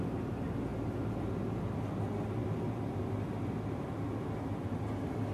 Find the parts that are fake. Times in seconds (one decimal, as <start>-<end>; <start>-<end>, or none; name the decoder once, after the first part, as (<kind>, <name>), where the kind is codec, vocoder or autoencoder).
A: 2.4-3.1 (vocoder, BigVGAN v2)